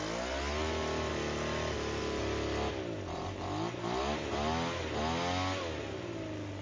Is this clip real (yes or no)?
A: yes